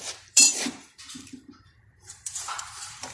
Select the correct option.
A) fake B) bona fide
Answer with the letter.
A